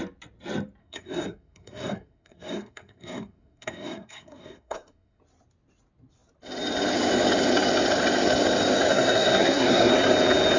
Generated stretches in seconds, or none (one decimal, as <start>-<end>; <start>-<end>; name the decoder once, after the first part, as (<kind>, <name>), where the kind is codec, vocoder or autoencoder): 0.8-5.2 (codec, SNAC); 8.9-9.9